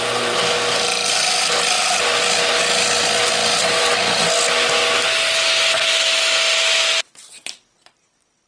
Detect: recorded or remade recorded